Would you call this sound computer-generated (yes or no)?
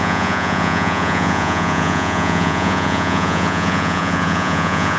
yes